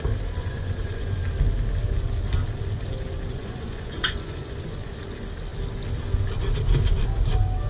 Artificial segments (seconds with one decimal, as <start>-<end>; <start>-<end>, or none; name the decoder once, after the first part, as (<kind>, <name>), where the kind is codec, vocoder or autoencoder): 0.4-1.1 (vocoder, Vocos); 3.3-4.9